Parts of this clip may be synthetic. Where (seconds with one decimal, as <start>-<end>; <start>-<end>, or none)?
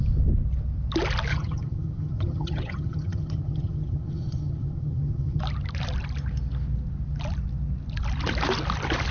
1.3-5.4